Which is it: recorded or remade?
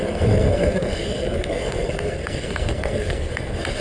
remade